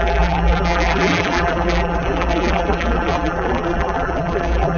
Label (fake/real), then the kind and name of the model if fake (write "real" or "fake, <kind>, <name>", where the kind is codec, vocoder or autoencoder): fake, vocoder, BigVGAN v2